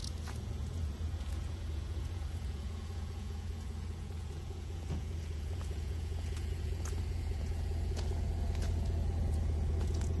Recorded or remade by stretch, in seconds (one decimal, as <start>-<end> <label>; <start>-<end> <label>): 0.0-10.2 remade